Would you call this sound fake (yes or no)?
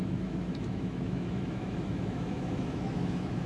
yes